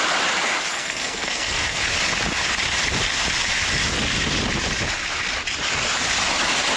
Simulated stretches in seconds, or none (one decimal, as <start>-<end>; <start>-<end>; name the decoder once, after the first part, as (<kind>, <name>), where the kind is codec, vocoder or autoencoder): 0.7-1.8 (codec, SNAC)